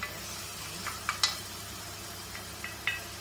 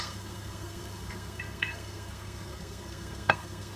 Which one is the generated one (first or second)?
second